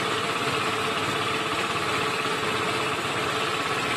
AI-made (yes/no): no